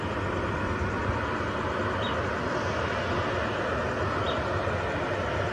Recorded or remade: recorded